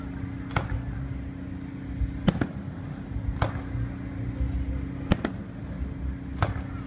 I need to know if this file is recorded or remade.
recorded